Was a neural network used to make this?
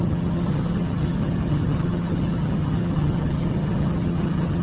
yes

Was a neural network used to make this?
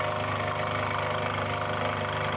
no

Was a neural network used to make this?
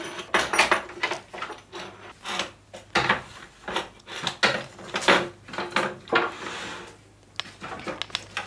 no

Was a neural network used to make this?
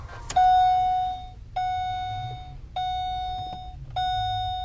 no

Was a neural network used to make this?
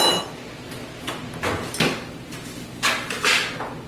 no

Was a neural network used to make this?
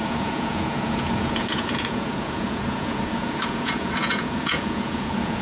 yes